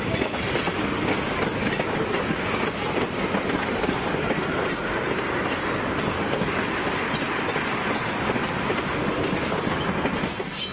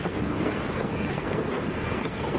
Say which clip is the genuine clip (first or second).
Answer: first